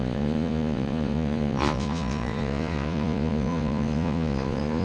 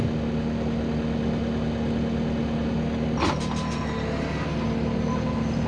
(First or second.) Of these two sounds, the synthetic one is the first